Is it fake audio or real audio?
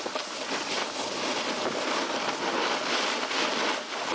real